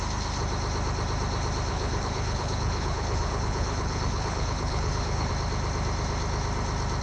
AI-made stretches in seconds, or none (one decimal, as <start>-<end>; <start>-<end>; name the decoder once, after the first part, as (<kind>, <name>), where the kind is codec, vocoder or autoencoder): 1.7-5.3 (codec, HILCodec)